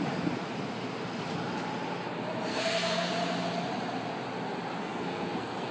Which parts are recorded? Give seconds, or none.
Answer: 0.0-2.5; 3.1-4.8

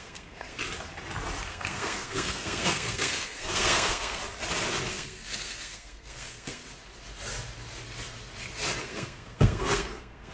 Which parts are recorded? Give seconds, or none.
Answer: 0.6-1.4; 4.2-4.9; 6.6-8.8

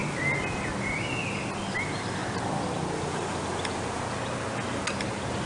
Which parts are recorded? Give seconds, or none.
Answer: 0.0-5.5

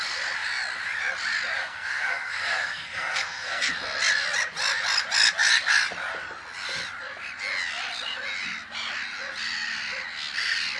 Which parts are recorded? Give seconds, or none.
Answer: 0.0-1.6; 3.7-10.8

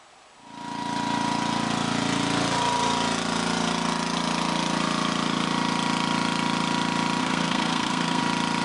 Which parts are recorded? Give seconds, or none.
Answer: 0.0-7.2; 8.2-8.6